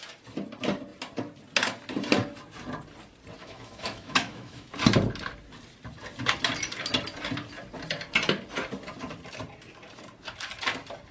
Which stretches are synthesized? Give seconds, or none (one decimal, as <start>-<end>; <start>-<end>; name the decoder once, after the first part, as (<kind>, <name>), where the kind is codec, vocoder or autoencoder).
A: 3.4-4.7 (autoencoder, DAC-VAE)